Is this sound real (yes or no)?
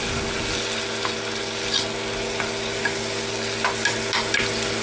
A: yes